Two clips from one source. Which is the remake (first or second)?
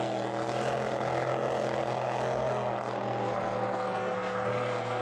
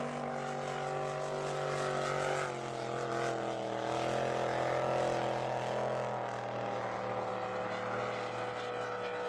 first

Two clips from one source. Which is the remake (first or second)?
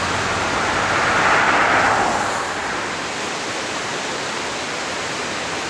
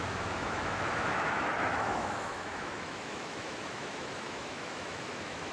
second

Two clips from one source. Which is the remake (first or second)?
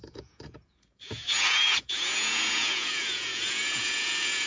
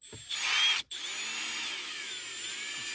first